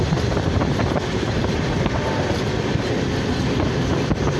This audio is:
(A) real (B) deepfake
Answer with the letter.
A